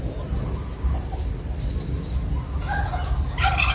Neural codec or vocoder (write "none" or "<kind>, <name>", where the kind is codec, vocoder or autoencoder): none